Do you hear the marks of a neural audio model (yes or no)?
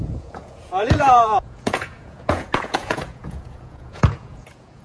yes